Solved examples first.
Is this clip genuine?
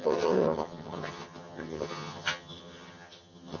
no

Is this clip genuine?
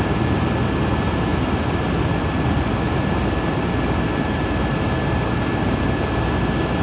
yes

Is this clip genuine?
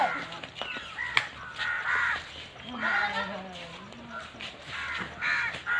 yes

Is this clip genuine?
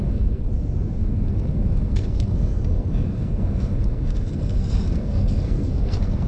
no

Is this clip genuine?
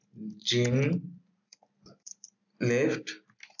yes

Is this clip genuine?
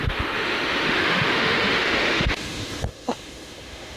no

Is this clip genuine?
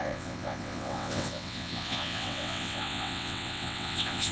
no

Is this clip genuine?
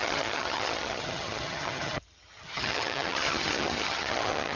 no